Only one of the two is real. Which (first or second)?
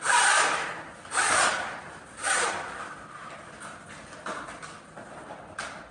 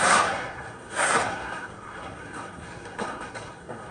first